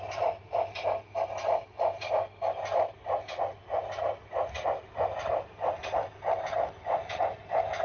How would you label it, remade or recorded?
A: recorded